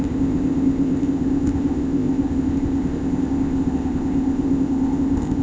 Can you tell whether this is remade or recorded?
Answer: remade